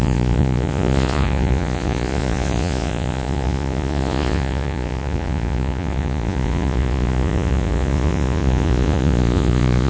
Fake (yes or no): yes